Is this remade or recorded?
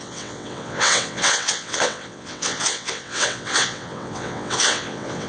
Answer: remade